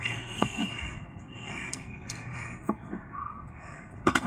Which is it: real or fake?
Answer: fake